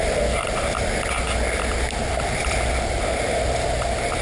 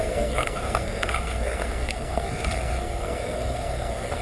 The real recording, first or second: first